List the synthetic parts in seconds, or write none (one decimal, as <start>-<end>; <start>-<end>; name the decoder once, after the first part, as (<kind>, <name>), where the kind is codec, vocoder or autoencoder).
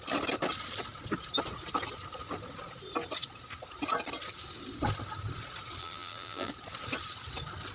5.8-6.5 (vocoder, BigVGAN v2)